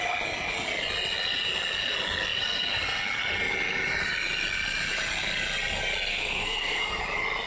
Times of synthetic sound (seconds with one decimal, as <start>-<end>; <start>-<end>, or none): 6.1-7.0